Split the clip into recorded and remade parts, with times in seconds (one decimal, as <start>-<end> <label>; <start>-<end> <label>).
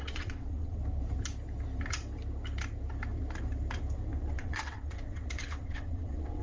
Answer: 0.0-0.8 remade; 0.8-4.3 recorded; 4.3-6.4 remade